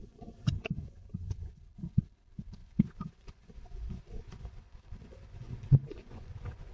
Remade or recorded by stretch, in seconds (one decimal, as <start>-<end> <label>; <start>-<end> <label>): 0.0-1.6 remade; 1.6-2.6 recorded; 2.6-6.7 remade